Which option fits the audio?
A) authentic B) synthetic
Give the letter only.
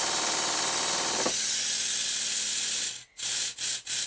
A